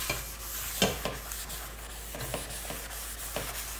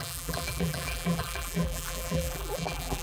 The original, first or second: first